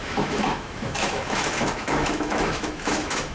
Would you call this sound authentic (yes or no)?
no